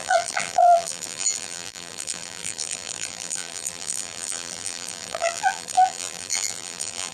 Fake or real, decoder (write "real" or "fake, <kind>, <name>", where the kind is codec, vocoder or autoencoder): fake, vocoder, BigVGAN v2